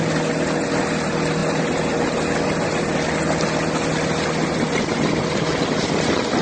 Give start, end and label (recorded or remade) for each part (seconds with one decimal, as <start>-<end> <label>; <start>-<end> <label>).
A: 0.0-6.4 recorded